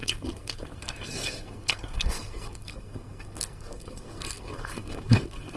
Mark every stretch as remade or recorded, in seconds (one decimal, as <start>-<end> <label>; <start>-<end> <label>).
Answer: 0.0-5.6 remade